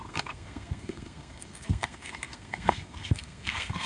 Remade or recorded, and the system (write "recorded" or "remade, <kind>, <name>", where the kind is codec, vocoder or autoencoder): remade, codec, SNAC